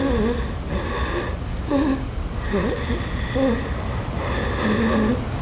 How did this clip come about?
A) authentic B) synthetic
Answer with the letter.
A